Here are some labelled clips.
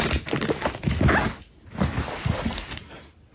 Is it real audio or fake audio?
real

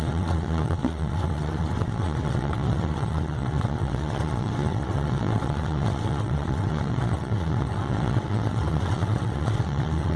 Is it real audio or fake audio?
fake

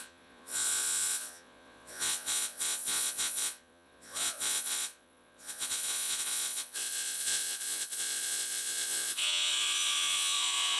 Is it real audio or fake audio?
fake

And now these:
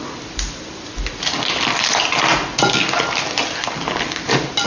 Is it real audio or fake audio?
real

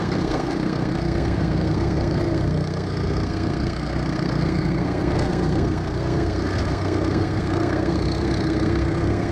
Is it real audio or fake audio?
fake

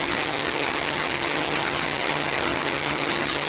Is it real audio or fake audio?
fake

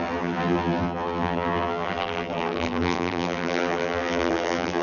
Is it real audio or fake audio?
fake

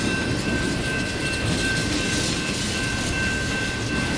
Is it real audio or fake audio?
real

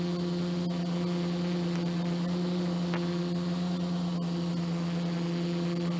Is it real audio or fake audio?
real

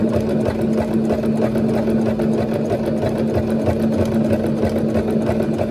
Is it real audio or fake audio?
real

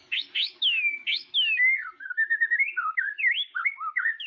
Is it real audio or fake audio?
fake